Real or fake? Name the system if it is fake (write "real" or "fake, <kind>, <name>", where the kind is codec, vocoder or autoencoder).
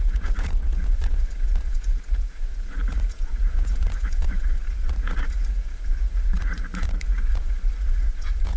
fake, vocoder, Vocos